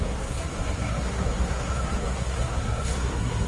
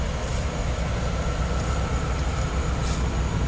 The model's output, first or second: first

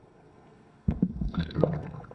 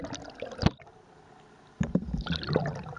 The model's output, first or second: first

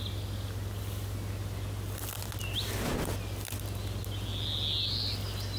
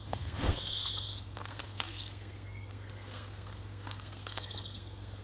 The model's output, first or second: second